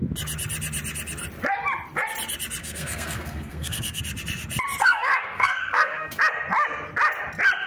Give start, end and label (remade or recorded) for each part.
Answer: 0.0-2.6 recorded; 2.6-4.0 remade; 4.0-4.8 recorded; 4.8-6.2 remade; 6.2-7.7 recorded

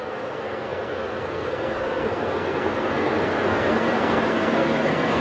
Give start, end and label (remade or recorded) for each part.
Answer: 0.0-5.2 remade

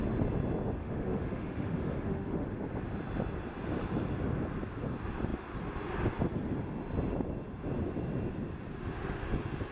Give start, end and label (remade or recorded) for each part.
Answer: 0.0-0.8 recorded; 0.8-2.6 remade; 2.6-9.7 recorded

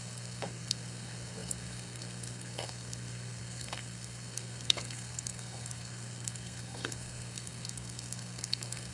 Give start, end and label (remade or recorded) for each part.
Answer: 0.0-8.9 remade